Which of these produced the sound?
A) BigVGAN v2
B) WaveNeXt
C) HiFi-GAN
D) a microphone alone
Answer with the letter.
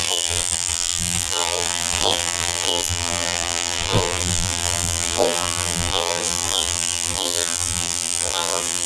A